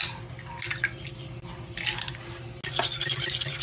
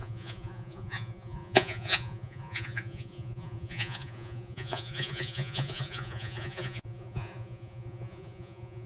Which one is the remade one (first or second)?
second